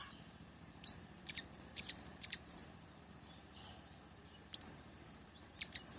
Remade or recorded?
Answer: remade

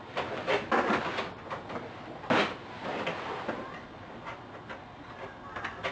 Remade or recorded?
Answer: recorded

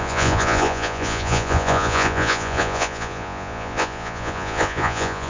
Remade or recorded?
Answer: remade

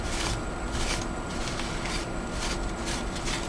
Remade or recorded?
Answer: recorded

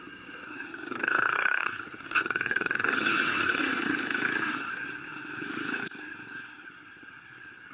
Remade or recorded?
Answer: remade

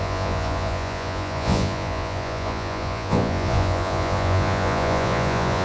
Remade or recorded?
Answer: remade